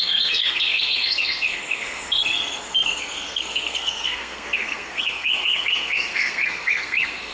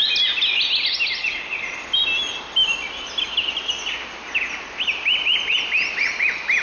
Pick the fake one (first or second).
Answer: first